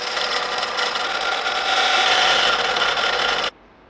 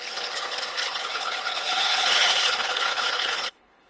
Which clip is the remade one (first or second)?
second